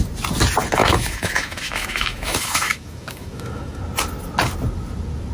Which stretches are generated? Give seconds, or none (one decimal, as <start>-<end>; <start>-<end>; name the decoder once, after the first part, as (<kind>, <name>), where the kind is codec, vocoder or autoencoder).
0.8-3.8 (autoencoder, DAC-VAE)